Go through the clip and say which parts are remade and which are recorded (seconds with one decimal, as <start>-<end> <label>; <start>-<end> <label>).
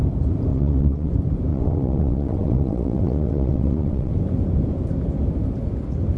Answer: 0.0-0.5 recorded; 0.5-1.1 remade; 1.1-1.5 recorded; 1.5-4.1 remade; 4.1-6.2 recorded